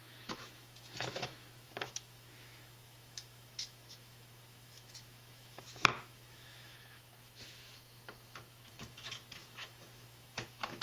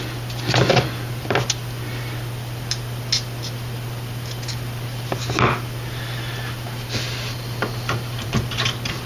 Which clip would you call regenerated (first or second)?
first